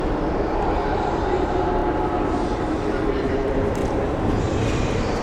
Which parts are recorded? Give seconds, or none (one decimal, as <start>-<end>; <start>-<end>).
1.8-3.1; 3.8-4.4